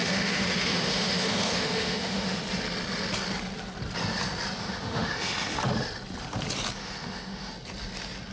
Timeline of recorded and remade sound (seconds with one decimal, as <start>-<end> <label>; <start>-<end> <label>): 0.0-2.4 remade; 2.4-4.6 recorded; 4.6-5.6 remade; 5.6-6.8 recorded; 6.8-7.5 remade; 7.5-8.3 recorded